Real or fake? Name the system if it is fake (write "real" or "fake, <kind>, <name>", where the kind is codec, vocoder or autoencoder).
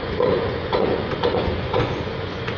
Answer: fake, vocoder, Vocos